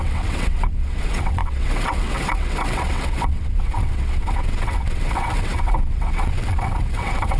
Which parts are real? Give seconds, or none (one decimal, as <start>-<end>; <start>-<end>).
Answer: none